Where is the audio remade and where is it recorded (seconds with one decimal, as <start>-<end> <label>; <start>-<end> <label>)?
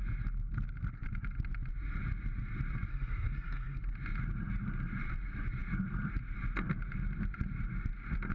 0.0-2.9 recorded; 2.9-3.8 remade; 3.8-8.3 recorded